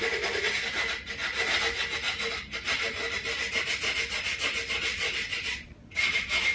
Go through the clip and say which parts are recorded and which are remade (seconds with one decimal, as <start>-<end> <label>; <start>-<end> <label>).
0.0-4.9 recorded; 4.9-6.5 remade